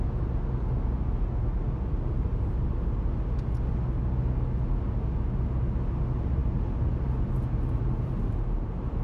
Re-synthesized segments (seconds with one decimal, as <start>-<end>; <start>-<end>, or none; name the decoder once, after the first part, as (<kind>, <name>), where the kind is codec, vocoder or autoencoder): none